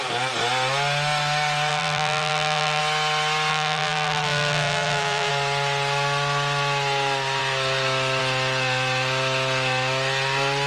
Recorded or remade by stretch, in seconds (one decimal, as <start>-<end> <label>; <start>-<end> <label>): 0.0-1.7 recorded; 1.7-2.8 remade; 2.8-3.5 recorded; 3.5-5.3 remade; 5.3-10.7 recorded